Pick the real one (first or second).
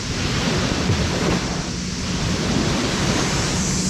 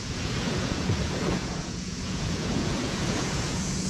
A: first